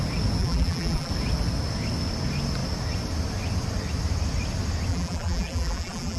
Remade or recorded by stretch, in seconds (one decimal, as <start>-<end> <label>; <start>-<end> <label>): 0.0-0.4 recorded; 0.4-1.1 remade; 1.1-4.9 recorded; 4.9-6.2 remade